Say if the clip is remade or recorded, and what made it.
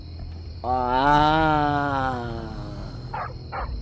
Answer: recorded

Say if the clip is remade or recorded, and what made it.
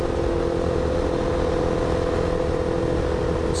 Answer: recorded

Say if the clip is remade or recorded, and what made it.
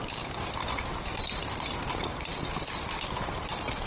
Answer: recorded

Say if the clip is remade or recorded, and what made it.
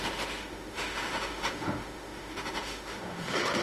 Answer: remade, autoencoder, DAC-VAE